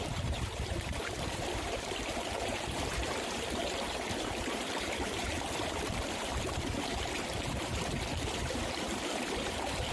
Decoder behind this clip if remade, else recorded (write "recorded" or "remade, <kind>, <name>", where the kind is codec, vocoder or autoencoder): remade, vocoder, BigVGAN v2